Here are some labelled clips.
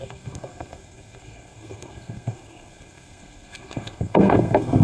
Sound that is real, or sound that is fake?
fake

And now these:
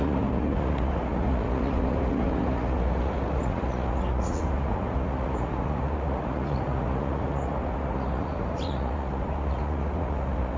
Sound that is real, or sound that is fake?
fake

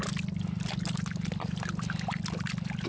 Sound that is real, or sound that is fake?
real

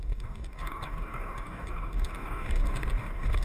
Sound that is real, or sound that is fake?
fake